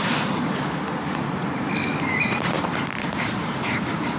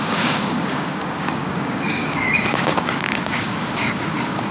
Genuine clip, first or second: first